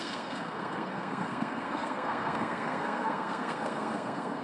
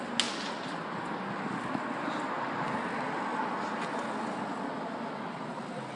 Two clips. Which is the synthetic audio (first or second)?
first